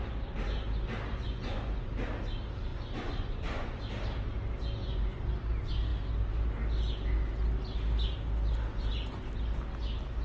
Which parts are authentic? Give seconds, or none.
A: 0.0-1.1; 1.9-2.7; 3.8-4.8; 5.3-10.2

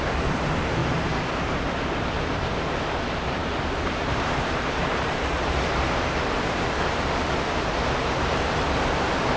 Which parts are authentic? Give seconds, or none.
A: none

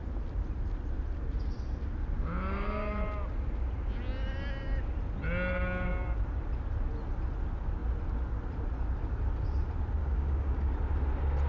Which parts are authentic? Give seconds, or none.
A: 0.0-10.0; 10.7-11.5

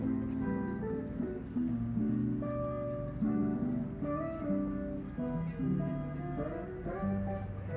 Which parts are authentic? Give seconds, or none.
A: 0.0-7.8

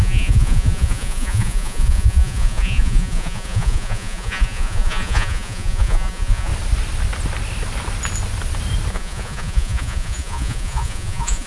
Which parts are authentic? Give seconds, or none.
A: 6.5-8.9

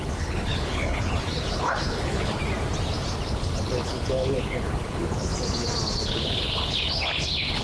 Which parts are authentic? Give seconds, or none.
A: 2.4-3.3; 5.3-6.0

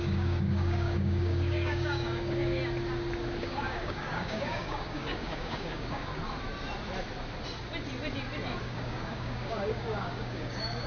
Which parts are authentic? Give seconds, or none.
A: 2.6-3.4; 6.1-8.6